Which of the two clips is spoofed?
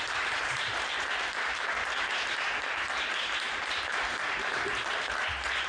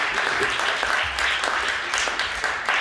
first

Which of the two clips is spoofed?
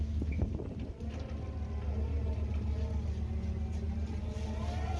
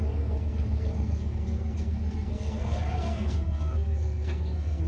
second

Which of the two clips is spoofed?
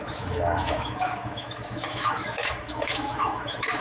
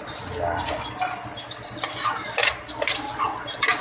first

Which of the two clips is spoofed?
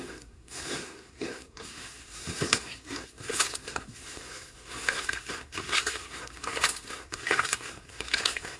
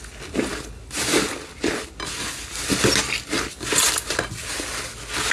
first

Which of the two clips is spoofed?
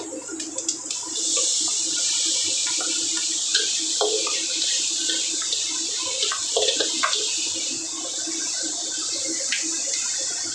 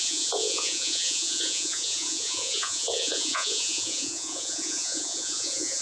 second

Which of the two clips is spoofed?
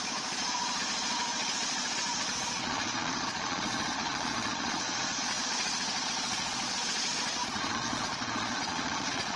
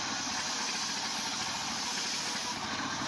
first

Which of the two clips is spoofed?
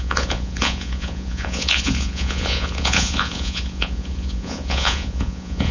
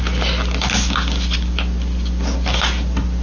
first